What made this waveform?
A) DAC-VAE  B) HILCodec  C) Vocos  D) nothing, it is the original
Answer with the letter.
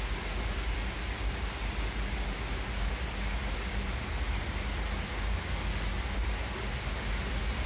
D